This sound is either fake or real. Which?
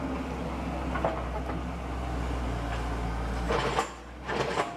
real